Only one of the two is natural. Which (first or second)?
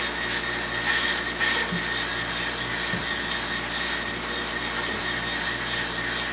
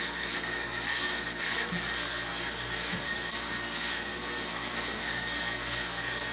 first